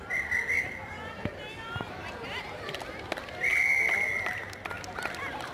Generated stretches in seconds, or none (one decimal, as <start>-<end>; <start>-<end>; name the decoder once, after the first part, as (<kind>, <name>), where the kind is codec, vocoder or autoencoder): 0.0-3.5 (vocoder, BigVGAN v2); 4.2-5.5